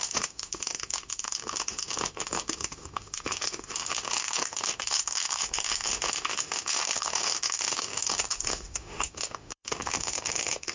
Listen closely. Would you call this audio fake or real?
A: fake